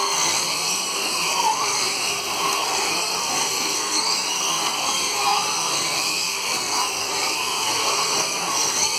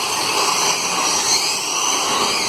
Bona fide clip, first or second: second